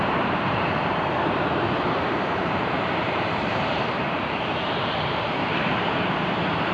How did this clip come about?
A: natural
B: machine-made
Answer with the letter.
B